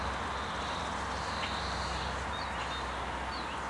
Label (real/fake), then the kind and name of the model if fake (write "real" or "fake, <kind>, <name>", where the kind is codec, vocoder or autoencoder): real